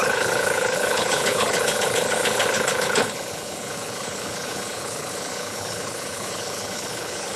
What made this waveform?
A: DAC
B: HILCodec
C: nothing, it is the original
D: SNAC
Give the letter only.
B